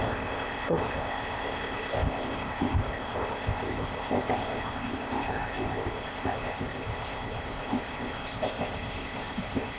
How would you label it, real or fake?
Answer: fake